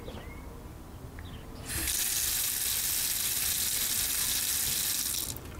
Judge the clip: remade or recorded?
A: recorded